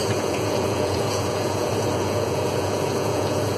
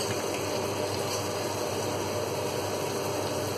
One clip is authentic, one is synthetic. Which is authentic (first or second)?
second